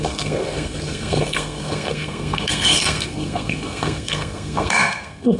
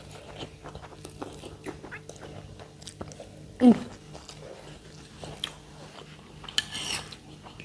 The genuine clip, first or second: second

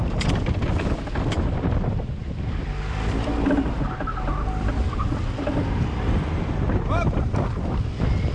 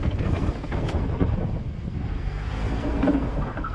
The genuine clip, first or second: first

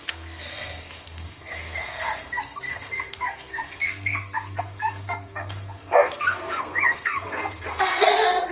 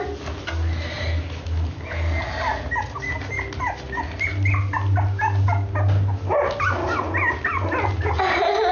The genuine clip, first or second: second